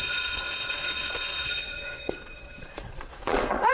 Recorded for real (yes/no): no